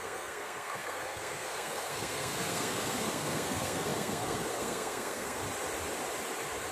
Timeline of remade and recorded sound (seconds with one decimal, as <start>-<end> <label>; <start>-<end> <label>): 0.0-5.4 remade; 5.4-6.7 recorded

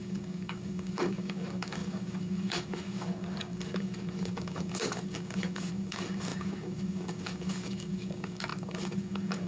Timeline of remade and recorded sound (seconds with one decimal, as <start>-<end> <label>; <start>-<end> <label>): 0.0-9.5 remade